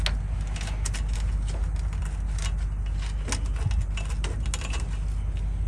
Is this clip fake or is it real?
real